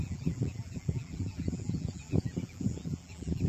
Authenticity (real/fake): fake